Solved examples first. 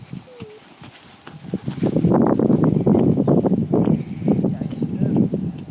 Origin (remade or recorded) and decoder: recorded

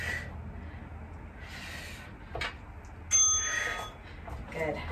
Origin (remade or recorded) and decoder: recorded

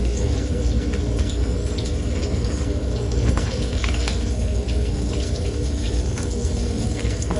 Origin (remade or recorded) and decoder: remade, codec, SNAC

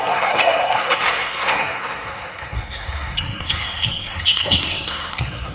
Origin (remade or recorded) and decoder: remade, codec, SNAC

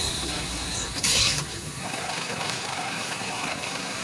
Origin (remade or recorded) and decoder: remade, codec, SNAC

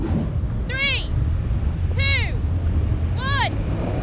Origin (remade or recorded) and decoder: recorded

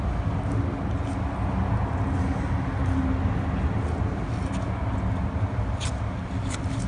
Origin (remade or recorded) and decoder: recorded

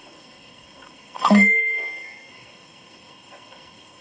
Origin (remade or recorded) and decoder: remade, codec, SNAC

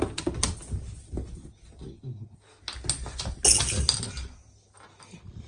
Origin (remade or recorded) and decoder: recorded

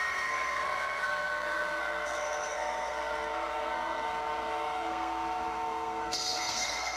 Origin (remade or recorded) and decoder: remade, codec, SNAC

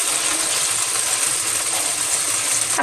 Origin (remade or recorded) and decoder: recorded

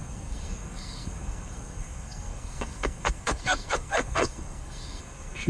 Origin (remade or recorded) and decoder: remade, codec, SNAC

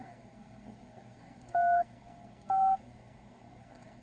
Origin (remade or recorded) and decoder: remade, codec, SNAC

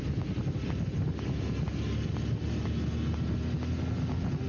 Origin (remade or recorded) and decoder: recorded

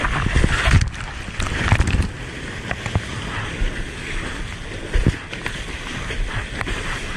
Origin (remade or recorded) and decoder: recorded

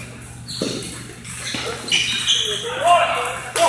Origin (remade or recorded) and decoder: recorded